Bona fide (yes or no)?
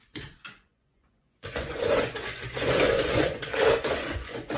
no